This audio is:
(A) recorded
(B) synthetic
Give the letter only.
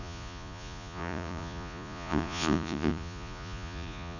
B